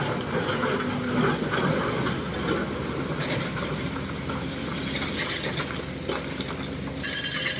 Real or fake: real